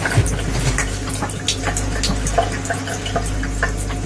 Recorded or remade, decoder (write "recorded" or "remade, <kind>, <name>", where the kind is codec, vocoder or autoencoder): recorded